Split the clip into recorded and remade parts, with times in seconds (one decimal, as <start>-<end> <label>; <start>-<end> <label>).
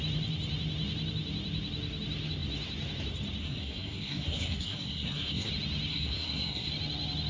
0.0-3.4 recorded; 3.4-5.5 remade; 5.5-5.9 recorded; 5.9-6.7 remade; 6.7-7.3 recorded